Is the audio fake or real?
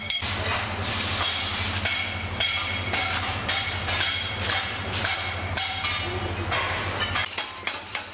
fake